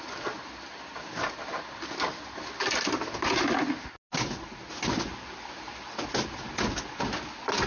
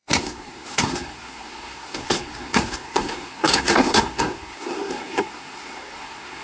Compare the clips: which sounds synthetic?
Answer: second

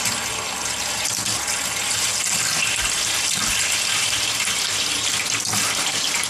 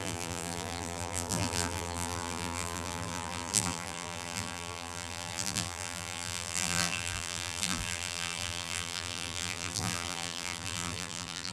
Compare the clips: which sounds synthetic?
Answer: second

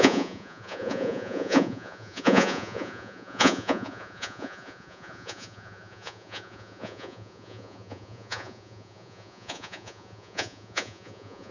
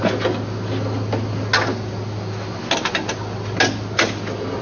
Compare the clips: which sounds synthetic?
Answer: first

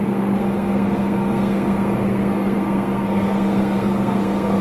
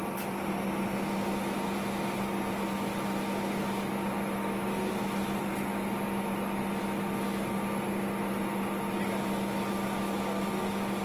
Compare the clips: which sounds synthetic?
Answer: first